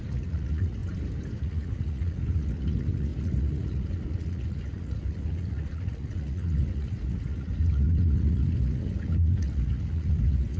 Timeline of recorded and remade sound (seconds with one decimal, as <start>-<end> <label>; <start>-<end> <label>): 0.0-0.8 remade; 0.8-1.4 recorded; 1.4-10.6 remade